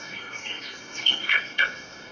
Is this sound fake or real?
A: fake